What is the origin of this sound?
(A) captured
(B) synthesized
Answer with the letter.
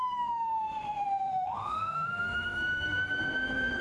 B